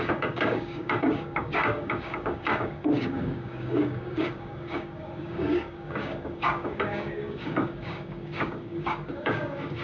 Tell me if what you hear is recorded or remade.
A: remade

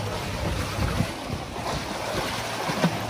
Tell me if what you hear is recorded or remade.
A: recorded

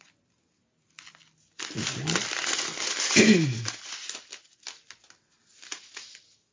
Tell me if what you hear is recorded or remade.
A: recorded